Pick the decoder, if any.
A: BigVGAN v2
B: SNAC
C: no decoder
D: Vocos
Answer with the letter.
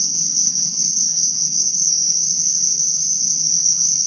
B